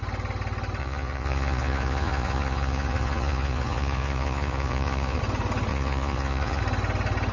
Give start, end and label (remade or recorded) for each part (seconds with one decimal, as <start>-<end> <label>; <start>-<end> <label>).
0.0-0.8 recorded; 0.8-5.2 remade; 5.2-5.7 recorded; 5.7-6.6 remade; 6.6-7.3 recorded